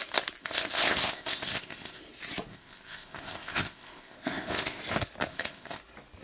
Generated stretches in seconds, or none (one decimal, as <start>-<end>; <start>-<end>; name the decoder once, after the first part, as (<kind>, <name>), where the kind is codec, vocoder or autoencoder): 0.4-2.0 (codec, ZipCodec); 2.5-4.8; 5.3-5.8